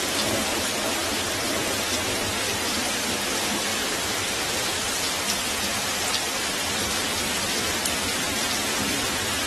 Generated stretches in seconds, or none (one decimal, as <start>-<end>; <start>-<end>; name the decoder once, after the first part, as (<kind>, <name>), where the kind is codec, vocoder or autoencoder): 3.7-5.2 (vocoder, BigVGAN v2)